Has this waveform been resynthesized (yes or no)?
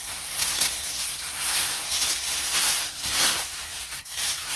yes